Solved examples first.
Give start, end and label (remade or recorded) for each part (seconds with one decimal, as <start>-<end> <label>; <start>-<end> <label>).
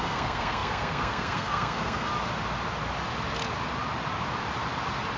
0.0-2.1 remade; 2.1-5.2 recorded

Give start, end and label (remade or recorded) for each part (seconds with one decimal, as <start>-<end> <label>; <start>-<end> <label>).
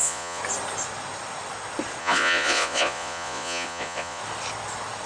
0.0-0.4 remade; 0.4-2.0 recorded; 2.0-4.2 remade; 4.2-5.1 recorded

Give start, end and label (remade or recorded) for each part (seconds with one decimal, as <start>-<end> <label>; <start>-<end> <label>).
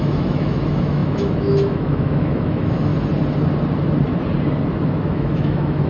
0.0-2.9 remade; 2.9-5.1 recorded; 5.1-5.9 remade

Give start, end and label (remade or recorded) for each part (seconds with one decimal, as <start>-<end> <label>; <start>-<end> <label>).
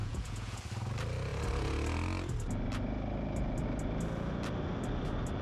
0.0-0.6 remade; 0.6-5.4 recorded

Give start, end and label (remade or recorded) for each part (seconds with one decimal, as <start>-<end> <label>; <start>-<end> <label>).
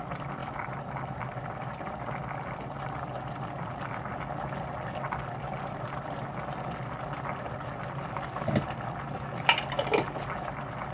0.0-10.9 recorded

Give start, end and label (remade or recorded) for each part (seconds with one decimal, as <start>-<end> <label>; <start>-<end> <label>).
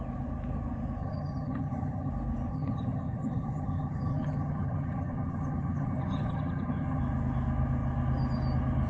0.0-1.0 recorded; 1.0-2.1 remade; 2.1-2.5 recorded; 2.5-7.0 remade; 7.0-8.9 recorded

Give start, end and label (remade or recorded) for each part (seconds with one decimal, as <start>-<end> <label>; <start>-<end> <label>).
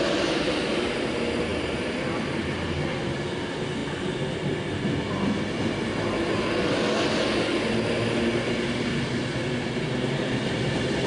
0.0-11.1 recorded